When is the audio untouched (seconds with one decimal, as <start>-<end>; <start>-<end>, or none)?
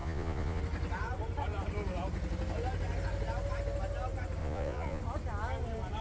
0.6-4.4; 5.0-6.0